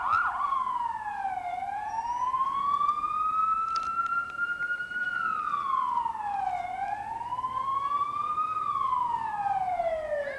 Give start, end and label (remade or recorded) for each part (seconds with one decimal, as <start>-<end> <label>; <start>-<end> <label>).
0.0-4.1 recorded; 4.1-6.4 remade; 6.4-7.7 recorded; 7.7-8.7 remade; 8.7-10.4 recorded